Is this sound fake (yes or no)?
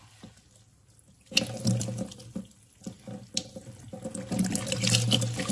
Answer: no